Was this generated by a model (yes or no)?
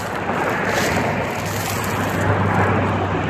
no